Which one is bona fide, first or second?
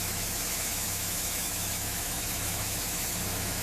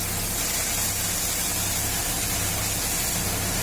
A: second